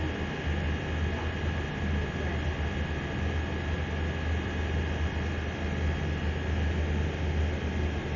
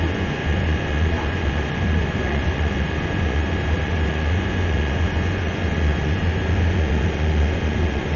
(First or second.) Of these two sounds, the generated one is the second